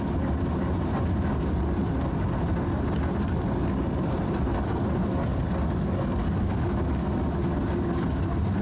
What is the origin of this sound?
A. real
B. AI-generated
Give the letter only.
A